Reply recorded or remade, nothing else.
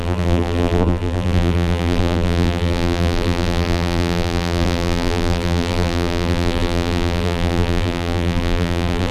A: remade